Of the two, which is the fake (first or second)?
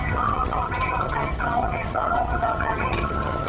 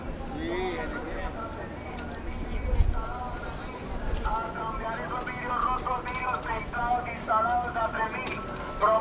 first